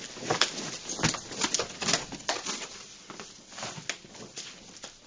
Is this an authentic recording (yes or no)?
yes